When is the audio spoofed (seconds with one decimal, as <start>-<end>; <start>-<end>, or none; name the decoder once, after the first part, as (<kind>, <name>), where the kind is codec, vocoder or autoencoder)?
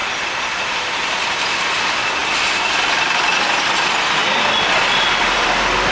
0.0-2.2 (vocoder, BigVGAN v2); 3.6-4.2; 5.2-5.9